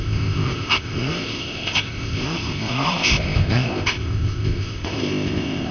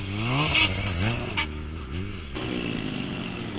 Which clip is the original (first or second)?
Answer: second